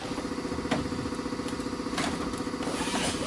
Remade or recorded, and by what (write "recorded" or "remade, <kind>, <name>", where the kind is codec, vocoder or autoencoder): recorded